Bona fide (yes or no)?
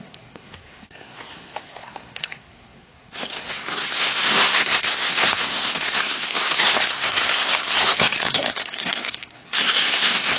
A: no